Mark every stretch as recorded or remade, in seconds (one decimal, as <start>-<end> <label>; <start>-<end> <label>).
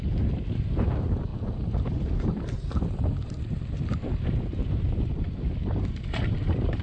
0.0-6.8 remade